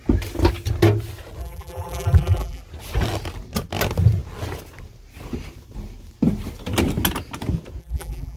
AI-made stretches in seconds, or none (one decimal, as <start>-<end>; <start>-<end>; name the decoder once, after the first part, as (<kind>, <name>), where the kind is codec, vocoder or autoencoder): 1.4-2.6 (vocoder, BigVGAN v2); 7.8-8.4